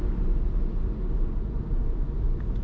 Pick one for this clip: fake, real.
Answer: real